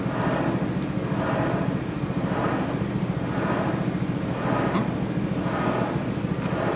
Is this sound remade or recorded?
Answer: recorded